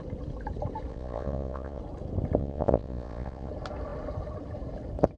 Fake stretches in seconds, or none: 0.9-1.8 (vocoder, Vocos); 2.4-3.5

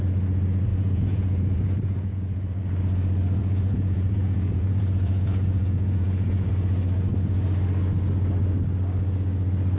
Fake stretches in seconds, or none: 0.7-2.6 (vocoder, Vocos); 3.4-6.5

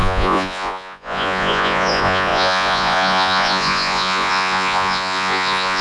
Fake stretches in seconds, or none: 0.0-5.8 (vocoder, Vocos)

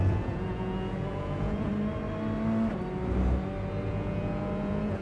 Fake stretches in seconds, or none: 0.0-1.7 (vocoder, Vocos); 3.9-5.0

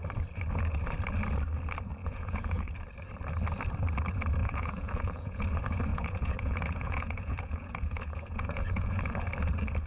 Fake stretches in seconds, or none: 2.0-2.7 (vocoder, Vocos); 4.4-5.4; 5.9-9.0